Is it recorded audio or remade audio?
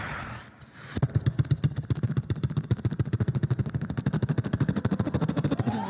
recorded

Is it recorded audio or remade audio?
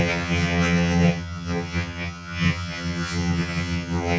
remade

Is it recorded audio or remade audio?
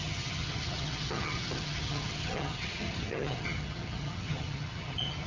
remade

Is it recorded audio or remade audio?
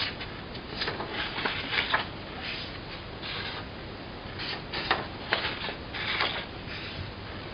recorded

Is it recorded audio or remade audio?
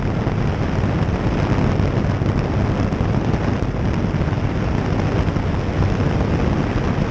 recorded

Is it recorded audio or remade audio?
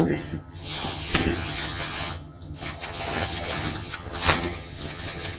remade